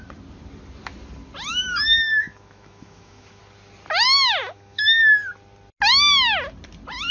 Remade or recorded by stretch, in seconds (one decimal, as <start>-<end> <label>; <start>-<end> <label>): 0.0-1.5 recorded; 1.5-3.4 remade; 3.4-4.4 recorded; 4.4-5.0 remade; 5.0-7.1 recorded